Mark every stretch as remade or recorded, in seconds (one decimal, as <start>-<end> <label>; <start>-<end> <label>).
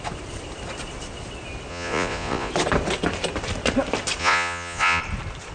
0.0-1.7 recorded; 1.7-2.5 remade; 2.5-4.2 recorded; 4.2-5.0 remade; 5.0-5.5 recorded